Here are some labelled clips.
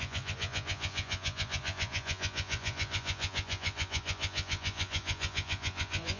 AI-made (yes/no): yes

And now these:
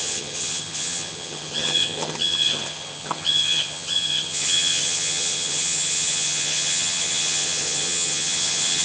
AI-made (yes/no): yes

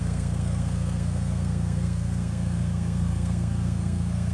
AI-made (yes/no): yes